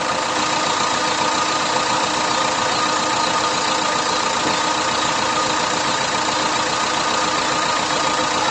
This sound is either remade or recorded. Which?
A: recorded